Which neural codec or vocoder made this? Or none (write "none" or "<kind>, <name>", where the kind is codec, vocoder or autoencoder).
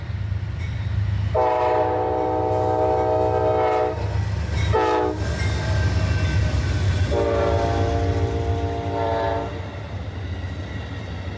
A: none